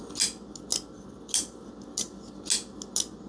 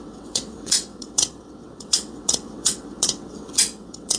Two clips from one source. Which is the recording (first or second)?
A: first